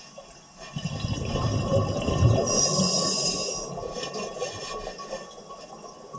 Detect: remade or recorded recorded